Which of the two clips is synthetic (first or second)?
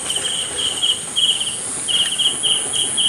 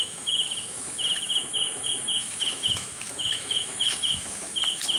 second